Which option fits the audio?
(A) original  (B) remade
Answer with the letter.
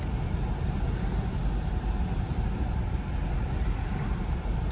A